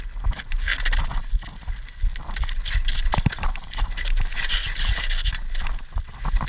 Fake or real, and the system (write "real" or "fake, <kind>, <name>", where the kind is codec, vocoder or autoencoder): real